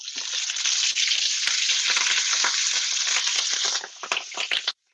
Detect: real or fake real